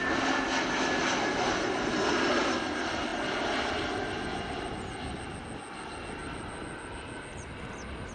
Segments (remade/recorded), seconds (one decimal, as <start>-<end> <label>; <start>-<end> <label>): 0.0-8.1 recorded